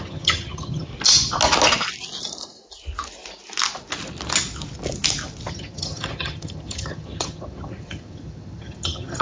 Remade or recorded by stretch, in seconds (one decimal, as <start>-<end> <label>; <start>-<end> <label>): 0.0-0.9 remade; 0.9-5.5 recorded; 5.5-9.2 remade